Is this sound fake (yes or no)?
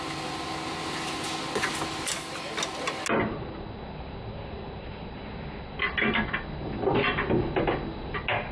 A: no